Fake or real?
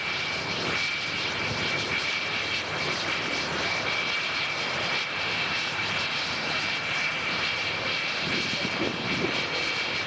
fake